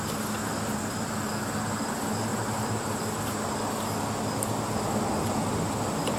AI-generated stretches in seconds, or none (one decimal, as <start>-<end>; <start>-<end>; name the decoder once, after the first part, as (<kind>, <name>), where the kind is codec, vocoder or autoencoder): 2.3-3.7 (vocoder, BigVGAN v2)